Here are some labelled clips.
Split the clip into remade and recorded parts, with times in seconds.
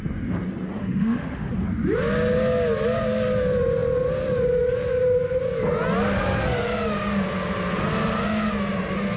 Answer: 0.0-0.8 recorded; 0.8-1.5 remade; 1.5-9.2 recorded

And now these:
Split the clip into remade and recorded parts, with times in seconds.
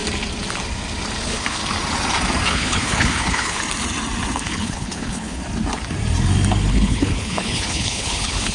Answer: 0.0-1.2 recorded; 1.2-1.6 remade; 1.6-2.5 recorded; 2.5-3.6 remade; 3.6-4.4 recorded; 4.4-5.4 remade; 5.4-6.7 recorded; 6.7-8.5 remade